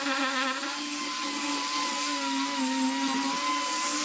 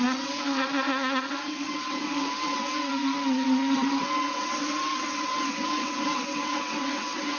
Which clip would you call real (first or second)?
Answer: first